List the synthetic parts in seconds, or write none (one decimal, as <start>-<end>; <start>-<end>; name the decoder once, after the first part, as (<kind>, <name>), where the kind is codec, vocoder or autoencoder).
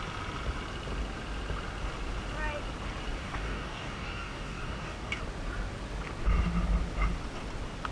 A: 3.2-5.2 (codec, DAC)